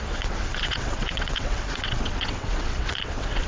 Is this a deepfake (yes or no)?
yes